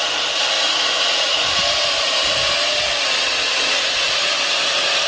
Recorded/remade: remade